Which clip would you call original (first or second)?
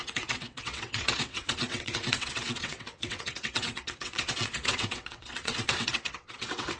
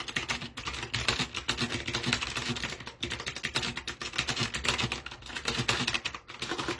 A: second